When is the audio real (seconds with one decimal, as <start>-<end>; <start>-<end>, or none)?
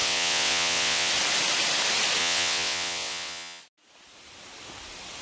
1.1-2.2; 3.6-5.2